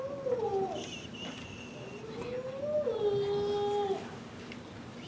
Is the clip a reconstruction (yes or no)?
no